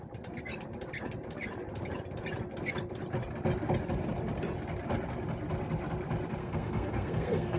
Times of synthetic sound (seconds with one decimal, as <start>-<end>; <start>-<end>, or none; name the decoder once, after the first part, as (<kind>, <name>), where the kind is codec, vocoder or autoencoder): 6.4-7.6 (codec, SNAC)